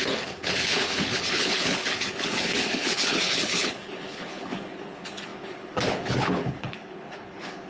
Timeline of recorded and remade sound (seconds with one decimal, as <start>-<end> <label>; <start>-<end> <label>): 0.0-7.7 remade